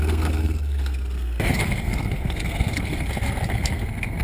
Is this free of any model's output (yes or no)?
no